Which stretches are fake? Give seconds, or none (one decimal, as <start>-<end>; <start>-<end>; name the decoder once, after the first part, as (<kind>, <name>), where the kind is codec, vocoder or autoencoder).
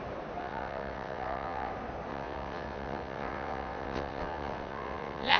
0.4-1.7 (vocoder, WaveNeXt); 2.1-5.4